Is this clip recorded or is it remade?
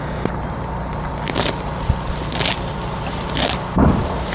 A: recorded